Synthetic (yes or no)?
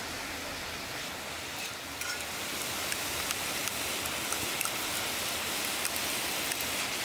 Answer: no